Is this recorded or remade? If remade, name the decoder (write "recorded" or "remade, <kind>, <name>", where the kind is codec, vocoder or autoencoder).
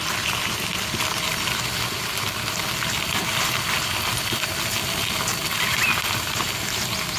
recorded